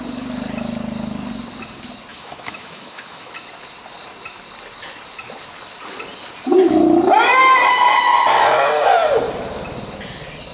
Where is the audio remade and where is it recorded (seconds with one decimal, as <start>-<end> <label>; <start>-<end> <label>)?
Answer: 0.0-2.1 recorded; 2.1-3.3 remade; 3.3-10.5 recorded